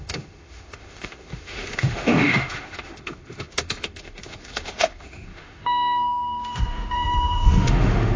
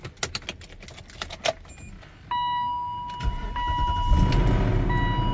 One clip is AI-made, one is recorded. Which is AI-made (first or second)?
first